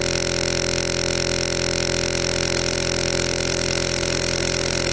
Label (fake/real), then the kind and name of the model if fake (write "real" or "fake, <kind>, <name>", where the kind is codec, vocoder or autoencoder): real